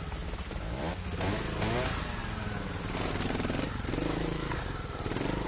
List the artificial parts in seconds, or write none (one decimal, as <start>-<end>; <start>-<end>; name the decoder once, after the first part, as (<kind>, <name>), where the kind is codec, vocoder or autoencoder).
2.2-5.5 (vocoder, BigVGAN v2)